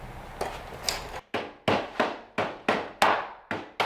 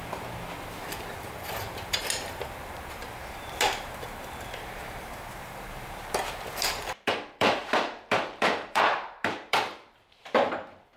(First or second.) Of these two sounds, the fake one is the second